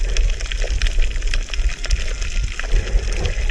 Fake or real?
real